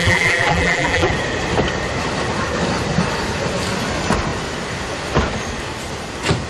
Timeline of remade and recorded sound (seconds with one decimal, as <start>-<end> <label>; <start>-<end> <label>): 0.0-1.1 remade; 1.1-6.5 recorded